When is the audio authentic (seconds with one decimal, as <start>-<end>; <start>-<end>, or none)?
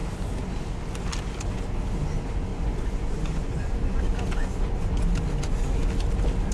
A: 0.0-2.5; 4.0-6.5